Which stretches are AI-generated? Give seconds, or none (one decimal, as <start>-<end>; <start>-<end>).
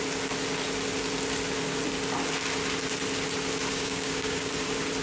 3.7-4.5